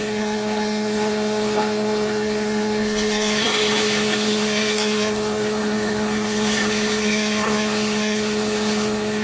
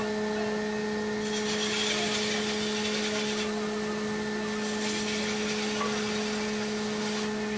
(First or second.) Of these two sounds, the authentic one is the second